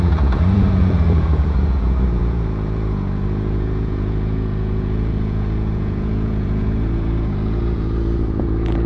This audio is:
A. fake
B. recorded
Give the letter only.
A